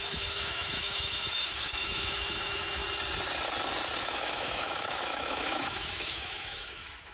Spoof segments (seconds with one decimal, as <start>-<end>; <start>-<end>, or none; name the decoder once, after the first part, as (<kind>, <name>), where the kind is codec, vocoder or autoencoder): 0.0-2.8 (autoencoder, DAC-VAE); 4.0-7.1